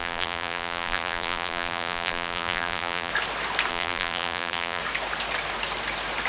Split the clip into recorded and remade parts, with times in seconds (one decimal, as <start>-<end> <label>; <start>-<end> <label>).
0.0-3.1 remade; 3.1-3.7 recorded; 3.7-4.8 remade; 4.8-6.3 recorded